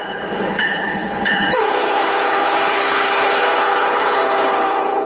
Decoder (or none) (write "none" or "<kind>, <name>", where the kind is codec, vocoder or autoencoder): codec, HILCodec